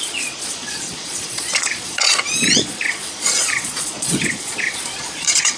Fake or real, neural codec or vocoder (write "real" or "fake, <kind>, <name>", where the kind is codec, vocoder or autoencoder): fake, vocoder, Vocos